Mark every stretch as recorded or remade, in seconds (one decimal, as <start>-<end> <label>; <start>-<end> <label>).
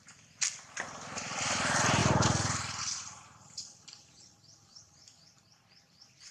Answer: 0.0-2.0 remade; 2.0-2.8 recorded; 2.8-6.3 remade